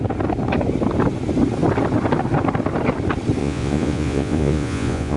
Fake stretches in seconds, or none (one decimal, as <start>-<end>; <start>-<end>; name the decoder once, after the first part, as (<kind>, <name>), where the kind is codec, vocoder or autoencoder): 3.4-5.2 (vocoder, Vocos)